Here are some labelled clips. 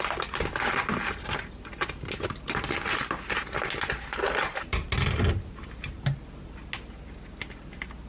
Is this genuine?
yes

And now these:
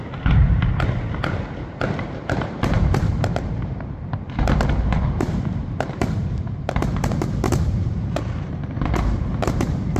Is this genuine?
no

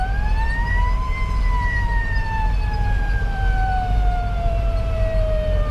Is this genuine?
no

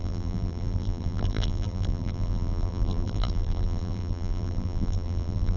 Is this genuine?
no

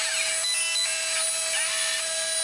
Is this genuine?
yes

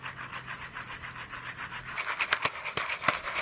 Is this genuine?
no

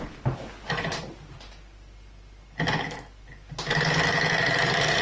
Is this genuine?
yes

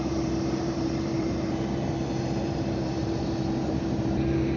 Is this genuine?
no